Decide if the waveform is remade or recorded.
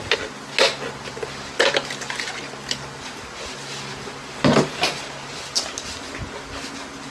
recorded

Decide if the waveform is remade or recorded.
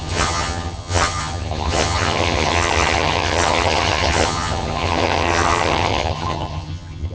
remade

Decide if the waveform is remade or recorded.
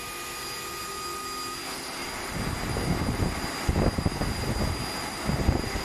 recorded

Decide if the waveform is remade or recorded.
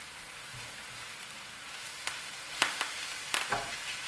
recorded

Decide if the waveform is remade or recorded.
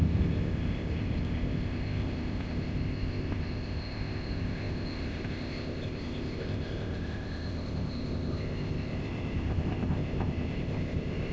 remade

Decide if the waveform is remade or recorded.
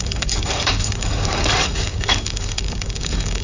remade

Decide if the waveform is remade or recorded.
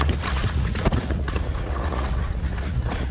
remade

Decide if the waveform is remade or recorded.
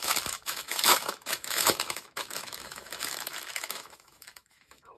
remade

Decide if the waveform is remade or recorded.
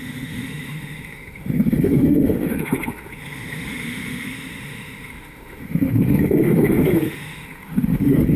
remade